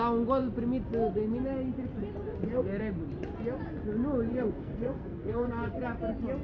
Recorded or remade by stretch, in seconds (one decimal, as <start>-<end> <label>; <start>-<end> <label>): 0.0-4.3 recorded; 4.3-5.8 remade; 5.8-6.4 recorded